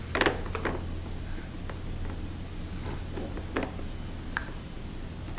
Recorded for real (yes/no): yes